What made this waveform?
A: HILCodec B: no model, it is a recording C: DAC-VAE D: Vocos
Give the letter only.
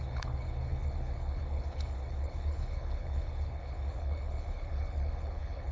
A